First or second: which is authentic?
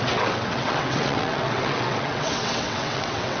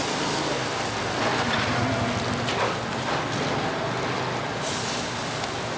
second